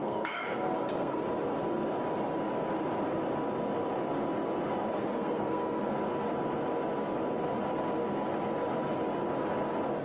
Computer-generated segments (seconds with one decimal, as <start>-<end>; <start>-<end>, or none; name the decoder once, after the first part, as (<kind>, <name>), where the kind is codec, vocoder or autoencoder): 0.0-1.2 (codec, SNAC); 5.0-5.9

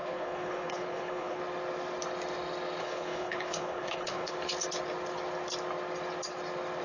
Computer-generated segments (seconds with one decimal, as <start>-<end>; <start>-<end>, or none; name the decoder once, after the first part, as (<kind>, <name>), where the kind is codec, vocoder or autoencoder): 0.0-1.4 (codec, HILCodec); 2.8-4.3

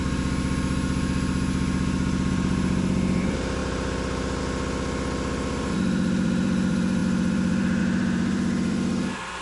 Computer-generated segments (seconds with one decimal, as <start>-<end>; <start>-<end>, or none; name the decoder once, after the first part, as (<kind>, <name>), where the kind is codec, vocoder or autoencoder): 2.3-9.4 (vocoder, BigVGAN v2)